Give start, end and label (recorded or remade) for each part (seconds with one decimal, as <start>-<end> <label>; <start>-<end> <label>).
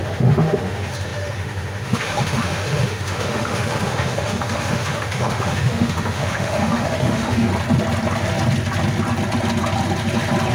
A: 0.0-7.5 remade; 7.5-10.5 recorded